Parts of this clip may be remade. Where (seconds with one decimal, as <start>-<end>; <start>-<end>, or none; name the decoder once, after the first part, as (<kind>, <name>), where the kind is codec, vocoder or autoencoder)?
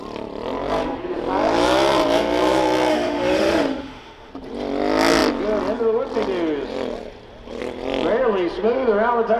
2.9-4.3 (autoencoder, DAC-VAE)